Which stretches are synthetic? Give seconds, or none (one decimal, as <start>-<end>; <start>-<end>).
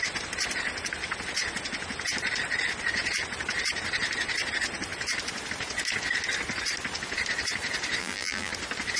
8.0-8.5